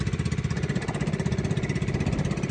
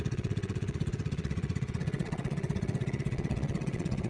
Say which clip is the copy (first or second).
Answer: second